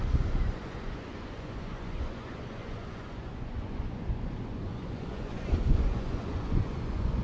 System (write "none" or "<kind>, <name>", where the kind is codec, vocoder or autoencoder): vocoder, Vocos